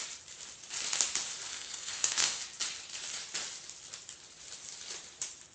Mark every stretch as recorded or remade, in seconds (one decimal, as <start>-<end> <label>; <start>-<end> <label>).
0.0-1.5 recorded; 1.5-2.4 remade; 2.4-5.5 recorded